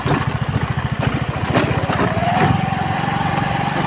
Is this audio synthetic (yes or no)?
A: no